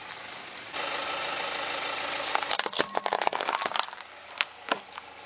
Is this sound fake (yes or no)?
no